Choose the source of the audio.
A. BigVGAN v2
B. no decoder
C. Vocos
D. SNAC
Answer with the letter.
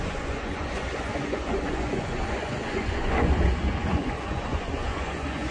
C